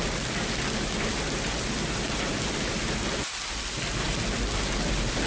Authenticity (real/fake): real